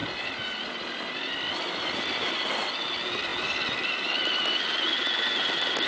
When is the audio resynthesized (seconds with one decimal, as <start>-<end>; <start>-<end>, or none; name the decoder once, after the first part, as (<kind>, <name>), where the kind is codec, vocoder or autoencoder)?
none